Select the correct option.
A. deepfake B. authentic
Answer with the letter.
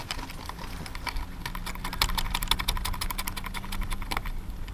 B